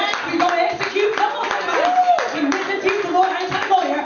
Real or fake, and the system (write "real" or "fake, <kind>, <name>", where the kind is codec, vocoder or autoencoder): real